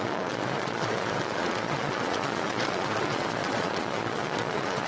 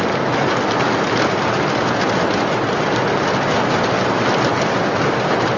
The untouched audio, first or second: second